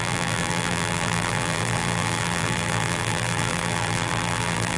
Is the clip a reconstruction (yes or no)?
yes